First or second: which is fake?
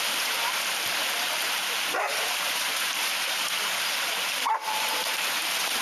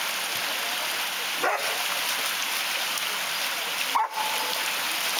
first